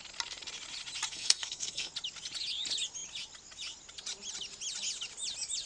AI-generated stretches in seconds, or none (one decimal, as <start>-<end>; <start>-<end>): 1.1-1.9